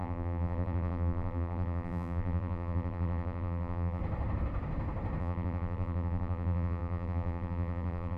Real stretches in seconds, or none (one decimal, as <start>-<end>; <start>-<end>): 4.0-5.2

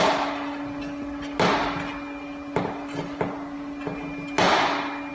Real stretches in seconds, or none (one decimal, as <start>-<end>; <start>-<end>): 0.0-5.1